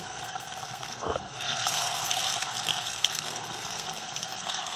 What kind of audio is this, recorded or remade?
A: remade